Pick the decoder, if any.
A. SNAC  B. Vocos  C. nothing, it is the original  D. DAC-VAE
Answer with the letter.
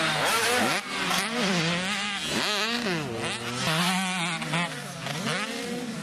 C